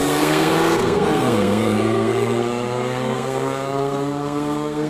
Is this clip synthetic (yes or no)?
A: yes